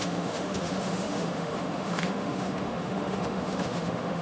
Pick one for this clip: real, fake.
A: fake